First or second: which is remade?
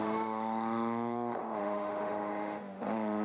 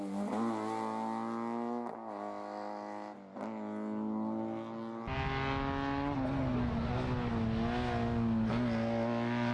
first